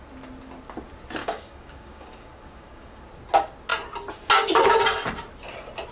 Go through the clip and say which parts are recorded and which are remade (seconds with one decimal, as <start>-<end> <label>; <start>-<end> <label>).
0.0-1.2 recorded; 1.2-3.0 remade; 3.0-5.9 recorded